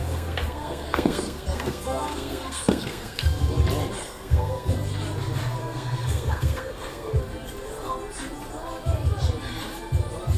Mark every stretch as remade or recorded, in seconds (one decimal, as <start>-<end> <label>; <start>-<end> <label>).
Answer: 0.0-3.5 remade; 3.5-4.0 recorded; 4.0-4.7 remade; 4.7-5.6 recorded; 5.6-7.2 remade; 7.2-10.4 recorded